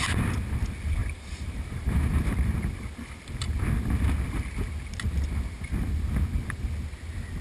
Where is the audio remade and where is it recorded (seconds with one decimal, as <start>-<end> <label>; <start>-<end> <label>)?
0.0-1.0 recorded; 1.0-2.2 remade; 2.2-7.4 recorded